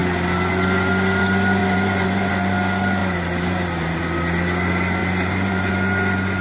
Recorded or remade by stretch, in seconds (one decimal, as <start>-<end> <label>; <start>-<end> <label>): 0.0-1.6 recorded; 1.6-2.3 remade; 2.3-3.0 recorded; 3.0-4.0 remade; 4.0-5.0 recorded; 5.0-5.7 remade; 5.7-6.4 recorded